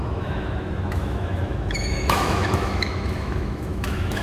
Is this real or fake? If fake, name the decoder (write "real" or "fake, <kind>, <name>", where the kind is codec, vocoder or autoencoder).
fake, autoencoder, DAC-VAE